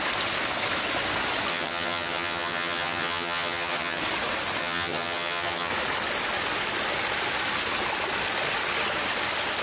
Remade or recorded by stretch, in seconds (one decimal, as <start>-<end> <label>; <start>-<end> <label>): 0.0-1.5 recorded; 1.5-4.0 remade; 4.0-4.6 recorded; 4.6-5.7 remade; 5.7-9.6 recorded